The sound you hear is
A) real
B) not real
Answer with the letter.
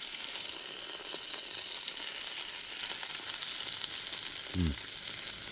A